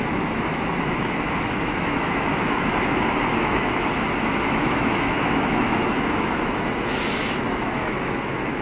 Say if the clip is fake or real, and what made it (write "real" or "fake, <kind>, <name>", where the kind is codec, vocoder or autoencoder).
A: fake, autoencoder, DAC-VAE